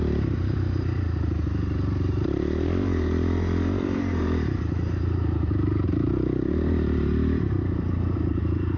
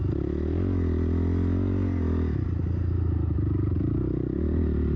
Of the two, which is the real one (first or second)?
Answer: second